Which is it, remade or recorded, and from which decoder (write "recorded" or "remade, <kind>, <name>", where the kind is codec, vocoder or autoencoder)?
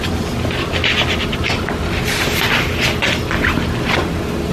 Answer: recorded